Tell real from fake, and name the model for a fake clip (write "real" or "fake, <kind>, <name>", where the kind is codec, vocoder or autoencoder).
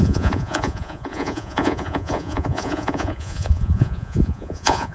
fake, vocoder, Vocos